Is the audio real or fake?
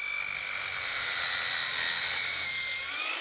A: real